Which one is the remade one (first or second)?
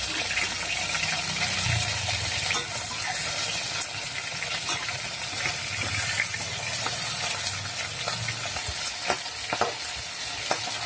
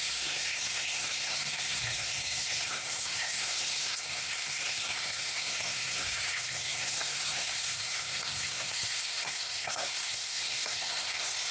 second